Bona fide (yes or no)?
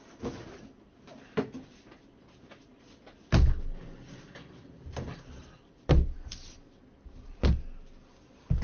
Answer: yes